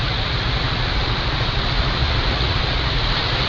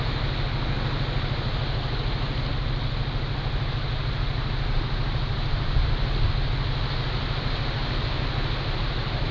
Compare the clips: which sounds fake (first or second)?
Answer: first